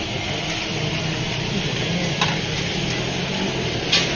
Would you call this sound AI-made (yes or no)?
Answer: no